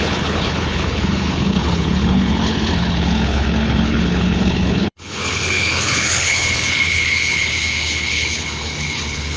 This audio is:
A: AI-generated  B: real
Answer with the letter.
A